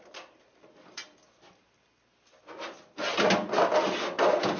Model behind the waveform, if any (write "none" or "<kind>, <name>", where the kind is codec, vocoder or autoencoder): none